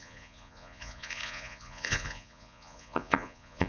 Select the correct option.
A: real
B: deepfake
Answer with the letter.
B